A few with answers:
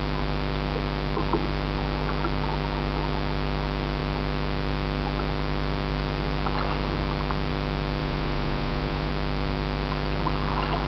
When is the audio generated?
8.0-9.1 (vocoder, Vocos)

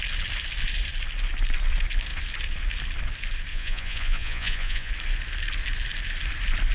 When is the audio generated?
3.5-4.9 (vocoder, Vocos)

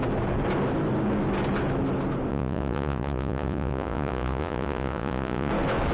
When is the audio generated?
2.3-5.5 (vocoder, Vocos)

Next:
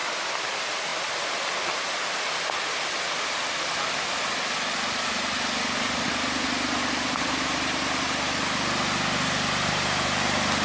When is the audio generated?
none